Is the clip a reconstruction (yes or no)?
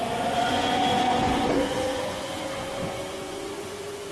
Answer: yes